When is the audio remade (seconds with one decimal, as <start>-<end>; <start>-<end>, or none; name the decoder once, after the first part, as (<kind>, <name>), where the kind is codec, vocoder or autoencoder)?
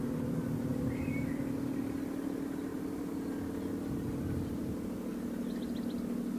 0.7-1.3 (vocoder, BigVGAN v2); 2.7-3.2